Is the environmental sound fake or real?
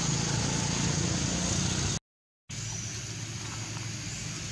real